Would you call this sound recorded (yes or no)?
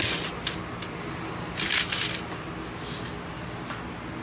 yes